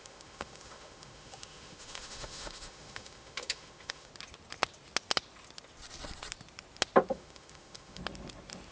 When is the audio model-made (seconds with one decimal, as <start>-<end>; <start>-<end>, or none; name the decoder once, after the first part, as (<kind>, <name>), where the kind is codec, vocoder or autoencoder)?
0.0-4.1 (autoencoder, DAC-VAE); 7.1-8.0